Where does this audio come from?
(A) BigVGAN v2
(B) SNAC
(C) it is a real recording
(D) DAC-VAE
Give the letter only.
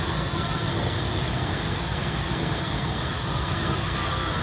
B